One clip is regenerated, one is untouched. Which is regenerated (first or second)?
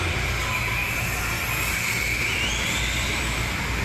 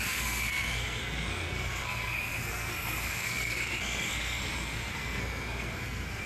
second